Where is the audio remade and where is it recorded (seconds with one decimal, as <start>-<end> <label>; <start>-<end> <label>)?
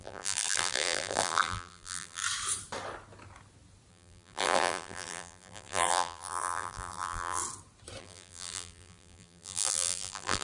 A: 0.0-2.2 remade; 2.2-3.9 recorded; 3.9-7.4 remade; 7.4-8.0 recorded; 8.0-10.4 remade